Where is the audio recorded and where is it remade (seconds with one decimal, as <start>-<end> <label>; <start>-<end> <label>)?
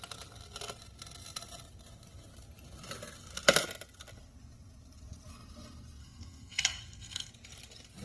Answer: 0.0-6.0 recorded; 6.0-7.3 remade; 7.3-8.0 recorded